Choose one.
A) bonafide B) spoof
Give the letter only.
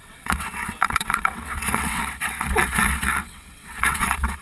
B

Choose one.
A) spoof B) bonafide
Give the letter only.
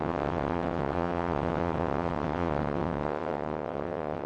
A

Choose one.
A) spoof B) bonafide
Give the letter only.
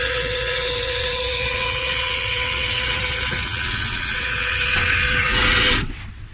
A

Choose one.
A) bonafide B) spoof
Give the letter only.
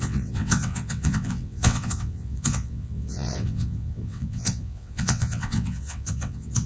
B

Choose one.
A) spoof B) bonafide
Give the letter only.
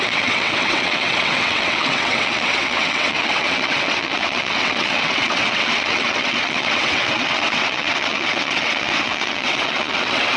A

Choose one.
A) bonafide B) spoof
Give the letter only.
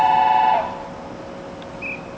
A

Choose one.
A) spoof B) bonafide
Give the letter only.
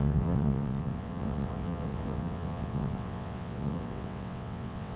A